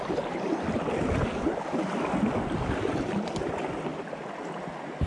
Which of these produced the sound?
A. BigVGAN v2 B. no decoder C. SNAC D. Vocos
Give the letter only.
B